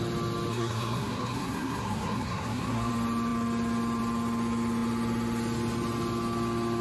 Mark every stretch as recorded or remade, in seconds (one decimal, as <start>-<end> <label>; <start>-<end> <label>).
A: 0.0-0.5 recorded; 0.5-2.9 remade; 2.9-6.8 recorded